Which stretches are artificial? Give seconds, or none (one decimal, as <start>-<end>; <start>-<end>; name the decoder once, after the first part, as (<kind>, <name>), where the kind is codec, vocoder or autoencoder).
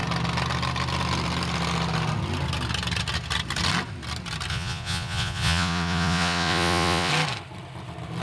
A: 4.5-7.1 (vocoder, Vocos)